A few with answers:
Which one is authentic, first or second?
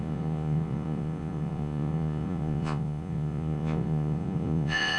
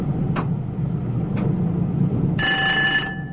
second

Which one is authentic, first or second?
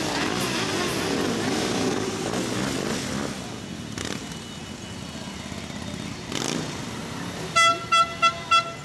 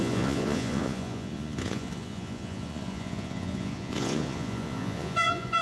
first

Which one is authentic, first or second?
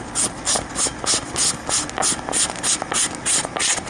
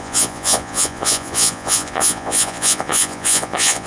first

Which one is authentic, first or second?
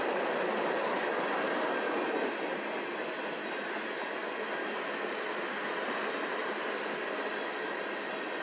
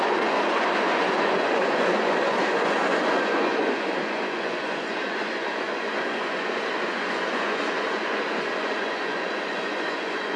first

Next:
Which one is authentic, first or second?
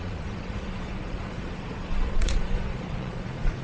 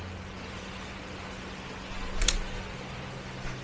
second